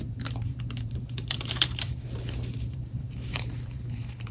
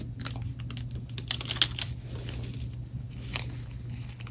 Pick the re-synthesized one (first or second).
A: first